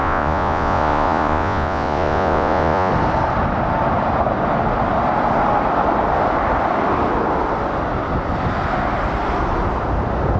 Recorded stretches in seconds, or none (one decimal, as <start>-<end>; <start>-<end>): 2.9-10.4